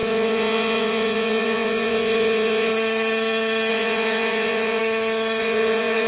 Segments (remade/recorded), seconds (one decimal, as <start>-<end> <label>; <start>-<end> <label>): 0.0-2.7 remade; 2.7-3.7 recorded; 3.7-4.8 remade; 4.8-5.4 recorded; 5.4-6.1 remade